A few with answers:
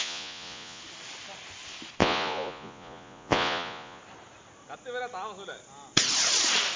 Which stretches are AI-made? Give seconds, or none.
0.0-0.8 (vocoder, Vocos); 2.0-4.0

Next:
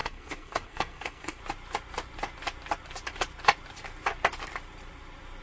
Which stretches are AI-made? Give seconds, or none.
0.0-1.4 (codec, SNAC)

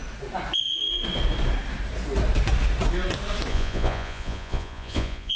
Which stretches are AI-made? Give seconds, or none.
3.5-5.4 (vocoder, Vocos)

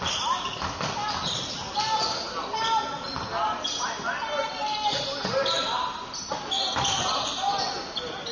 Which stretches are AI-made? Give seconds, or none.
5.6-6.3 (vocoder, BigVGAN v2)

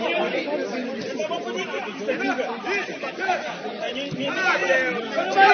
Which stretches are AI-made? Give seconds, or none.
none